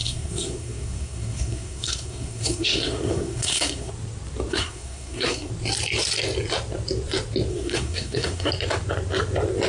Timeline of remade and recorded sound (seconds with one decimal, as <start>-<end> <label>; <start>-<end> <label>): 0.0-3.9 remade; 3.9-4.5 recorded; 4.5-5.5 remade; 5.5-7.5 recorded; 7.5-8.5 remade; 8.5-9.7 recorded